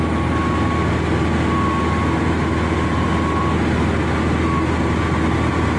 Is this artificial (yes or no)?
no